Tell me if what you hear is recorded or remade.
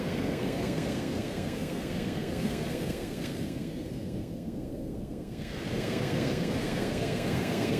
remade